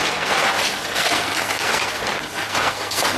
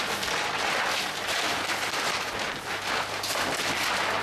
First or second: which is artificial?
first